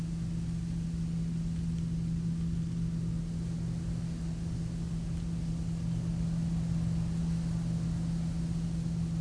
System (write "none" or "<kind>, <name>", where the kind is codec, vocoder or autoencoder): none